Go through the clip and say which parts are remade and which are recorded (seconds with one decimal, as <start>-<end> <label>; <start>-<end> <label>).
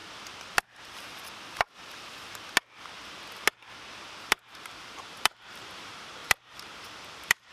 0.0-4.2 recorded; 4.2-7.5 remade